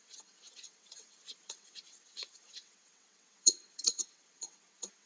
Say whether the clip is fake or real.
fake